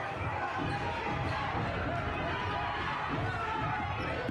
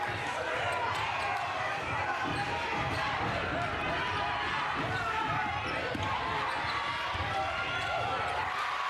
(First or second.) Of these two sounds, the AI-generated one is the second